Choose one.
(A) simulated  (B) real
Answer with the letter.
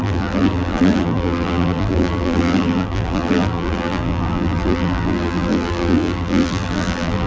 A